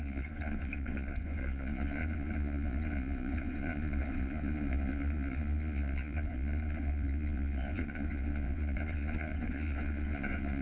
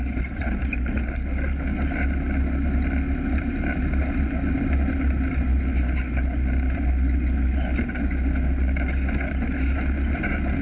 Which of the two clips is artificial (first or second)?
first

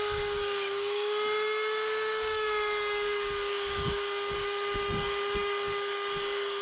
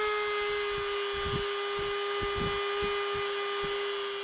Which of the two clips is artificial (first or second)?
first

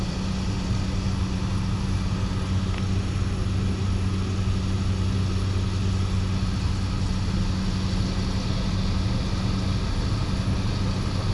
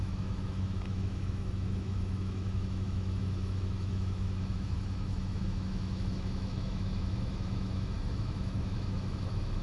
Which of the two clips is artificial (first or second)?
second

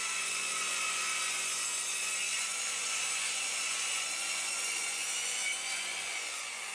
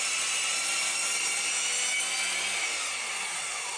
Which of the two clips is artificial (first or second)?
first